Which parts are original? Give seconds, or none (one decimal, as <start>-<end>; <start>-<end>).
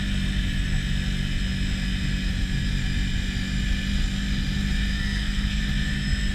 0.0-4.9; 5.6-6.3